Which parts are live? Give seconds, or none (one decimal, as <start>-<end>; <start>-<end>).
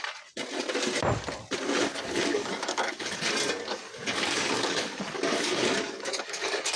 0.0-1.9; 3.3-3.7